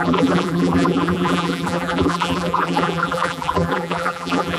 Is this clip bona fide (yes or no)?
no